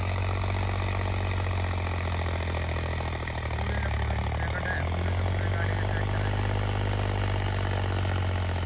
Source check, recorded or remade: recorded